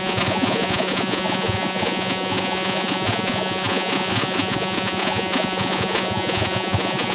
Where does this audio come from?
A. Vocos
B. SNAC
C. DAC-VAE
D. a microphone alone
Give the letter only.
A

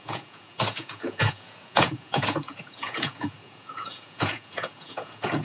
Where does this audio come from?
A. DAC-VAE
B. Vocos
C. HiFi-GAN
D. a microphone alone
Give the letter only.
B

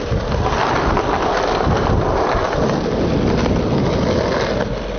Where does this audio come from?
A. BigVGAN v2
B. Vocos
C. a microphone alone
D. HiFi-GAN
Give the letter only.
C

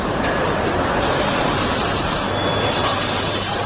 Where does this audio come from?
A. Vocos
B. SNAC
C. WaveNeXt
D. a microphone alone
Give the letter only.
D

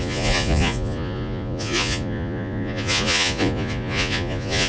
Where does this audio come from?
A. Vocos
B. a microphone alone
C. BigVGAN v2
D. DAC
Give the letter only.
A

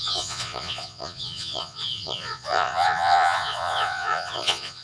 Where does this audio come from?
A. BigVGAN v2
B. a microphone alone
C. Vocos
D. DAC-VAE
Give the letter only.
C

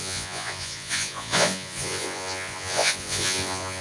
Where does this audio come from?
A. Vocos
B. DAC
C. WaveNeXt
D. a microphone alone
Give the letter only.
A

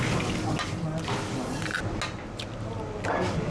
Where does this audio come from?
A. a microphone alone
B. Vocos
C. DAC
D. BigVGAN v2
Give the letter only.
A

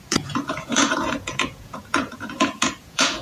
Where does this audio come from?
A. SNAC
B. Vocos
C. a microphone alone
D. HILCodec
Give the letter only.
B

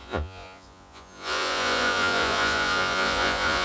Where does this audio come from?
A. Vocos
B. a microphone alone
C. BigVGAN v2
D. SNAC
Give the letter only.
A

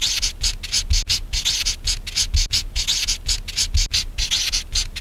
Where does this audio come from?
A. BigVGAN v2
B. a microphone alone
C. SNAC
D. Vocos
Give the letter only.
B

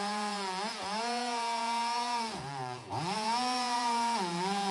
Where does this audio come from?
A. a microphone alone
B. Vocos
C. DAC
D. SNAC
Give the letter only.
B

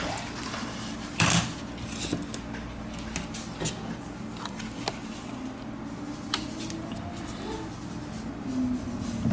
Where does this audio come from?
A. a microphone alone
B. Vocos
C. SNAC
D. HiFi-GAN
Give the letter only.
A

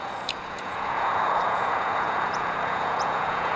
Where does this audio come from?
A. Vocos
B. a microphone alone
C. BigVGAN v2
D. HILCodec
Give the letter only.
A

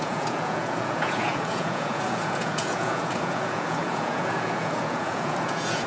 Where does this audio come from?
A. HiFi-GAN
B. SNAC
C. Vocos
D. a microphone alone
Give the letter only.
C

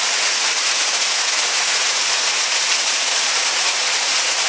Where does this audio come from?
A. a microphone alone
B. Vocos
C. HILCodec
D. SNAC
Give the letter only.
B